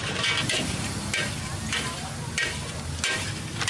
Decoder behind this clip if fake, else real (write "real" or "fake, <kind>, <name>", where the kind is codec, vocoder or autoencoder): real